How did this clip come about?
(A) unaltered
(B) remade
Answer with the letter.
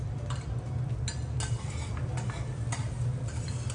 A